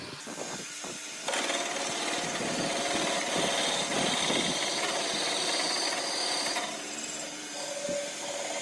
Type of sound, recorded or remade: recorded